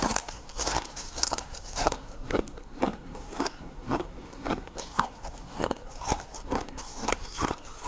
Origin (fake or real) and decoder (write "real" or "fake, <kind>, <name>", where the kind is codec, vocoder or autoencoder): fake, codec, SNAC